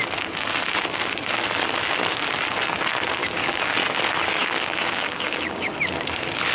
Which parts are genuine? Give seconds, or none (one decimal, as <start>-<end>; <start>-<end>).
0.0-3.2; 3.7-4.4; 5.7-6.5